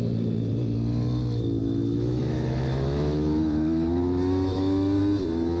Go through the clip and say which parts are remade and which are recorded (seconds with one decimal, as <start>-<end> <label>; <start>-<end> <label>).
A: 0.0-1.6 recorded; 1.6-5.0 remade; 5.0-5.6 recorded

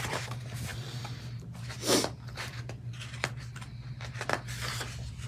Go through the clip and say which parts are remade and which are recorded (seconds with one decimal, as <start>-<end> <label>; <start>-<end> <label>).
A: 0.0-5.3 recorded

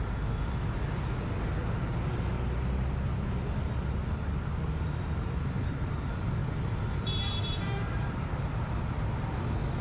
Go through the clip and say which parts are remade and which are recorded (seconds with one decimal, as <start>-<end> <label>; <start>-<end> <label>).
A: 0.0-9.8 recorded

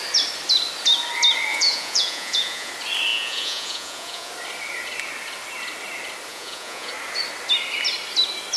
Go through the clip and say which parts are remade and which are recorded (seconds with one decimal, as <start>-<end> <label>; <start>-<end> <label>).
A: 0.0-1.5 recorded; 1.5-2.7 remade; 2.7-3.1 recorded; 3.1-4.3 remade; 4.3-6.3 recorded; 6.3-6.9 remade; 6.9-8.6 recorded